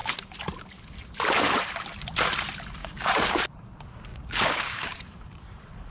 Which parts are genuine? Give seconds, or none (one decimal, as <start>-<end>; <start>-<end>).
0.0-2.8; 3.4-4.1; 5.0-5.9